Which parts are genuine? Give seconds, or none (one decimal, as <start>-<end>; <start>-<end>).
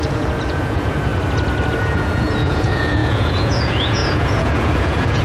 1.1-1.8